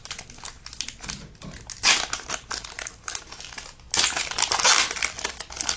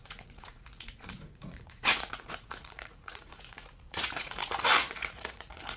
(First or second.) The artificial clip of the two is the second